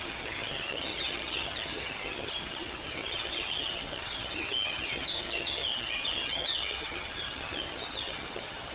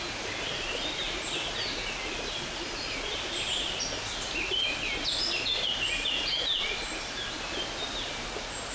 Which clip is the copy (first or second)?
first